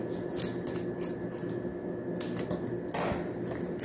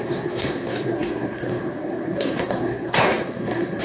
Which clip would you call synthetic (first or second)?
second